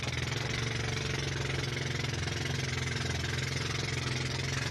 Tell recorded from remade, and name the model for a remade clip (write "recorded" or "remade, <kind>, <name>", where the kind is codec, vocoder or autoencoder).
recorded